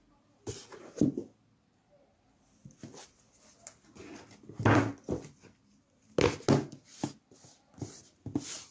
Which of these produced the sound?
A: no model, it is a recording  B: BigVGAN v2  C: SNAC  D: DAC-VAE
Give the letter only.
A